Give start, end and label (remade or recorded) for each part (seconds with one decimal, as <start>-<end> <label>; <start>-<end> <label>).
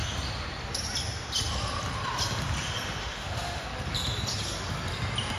0.0-3.0 recorded; 3.0-3.6 remade; 3.6-5.4 recorded